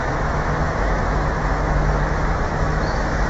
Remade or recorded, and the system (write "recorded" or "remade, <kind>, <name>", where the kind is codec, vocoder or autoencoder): remade, autoencoder, DAC-VAE